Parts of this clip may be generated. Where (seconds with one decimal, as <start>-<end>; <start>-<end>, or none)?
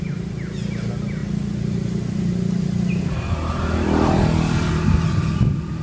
none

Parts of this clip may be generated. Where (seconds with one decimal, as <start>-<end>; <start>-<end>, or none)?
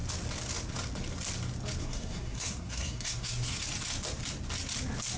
1.8-3.6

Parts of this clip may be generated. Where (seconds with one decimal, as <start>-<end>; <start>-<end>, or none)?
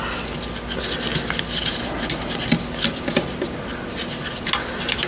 2.9-3.7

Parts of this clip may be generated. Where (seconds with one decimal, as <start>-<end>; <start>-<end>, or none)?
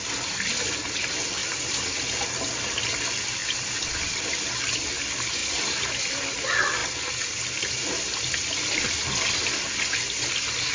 1.4-2.2; 5.4-6.1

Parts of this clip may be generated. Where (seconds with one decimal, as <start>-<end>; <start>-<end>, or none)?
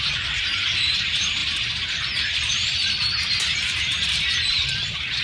none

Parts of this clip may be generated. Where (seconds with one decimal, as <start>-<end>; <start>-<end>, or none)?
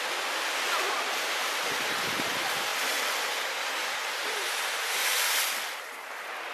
none